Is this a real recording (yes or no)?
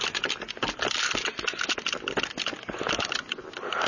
yes